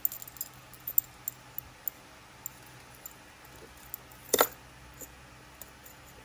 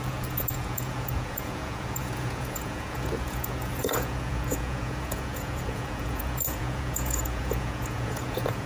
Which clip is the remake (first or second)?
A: second